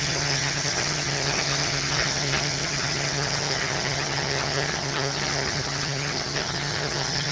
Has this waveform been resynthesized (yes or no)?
yes